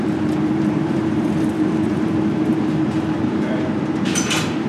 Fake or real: fake